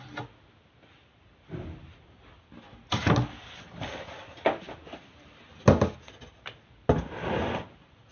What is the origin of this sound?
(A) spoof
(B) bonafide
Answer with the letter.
B